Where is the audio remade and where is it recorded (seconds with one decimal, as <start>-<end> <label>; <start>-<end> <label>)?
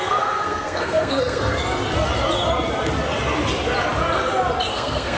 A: 0.0-1.6 remade; 1.6-4.7 recorded; 4.7-5.2 remade